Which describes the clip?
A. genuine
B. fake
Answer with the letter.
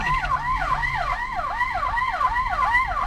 A